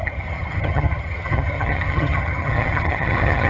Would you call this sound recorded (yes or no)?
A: no